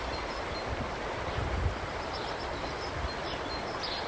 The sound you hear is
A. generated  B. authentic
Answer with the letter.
B